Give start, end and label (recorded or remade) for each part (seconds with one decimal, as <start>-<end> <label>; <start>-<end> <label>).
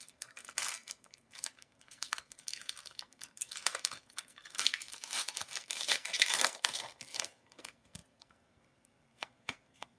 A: 0.0-10.0 remade